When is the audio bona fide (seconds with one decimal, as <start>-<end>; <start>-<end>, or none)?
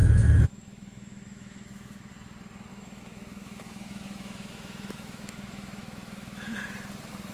2.1-2.7; 6.6-7.3